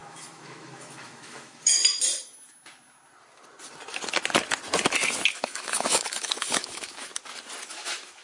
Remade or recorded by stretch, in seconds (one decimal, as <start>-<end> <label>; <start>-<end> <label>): 0.0-1.8 remade; 1.8-5.3 recorded; 5.3-7.1 remade; 7.1-7.7 recorded; 7.7-8.2 remade